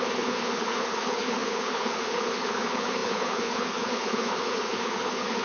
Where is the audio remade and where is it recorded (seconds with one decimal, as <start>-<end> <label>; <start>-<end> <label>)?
0.0-5.4 remade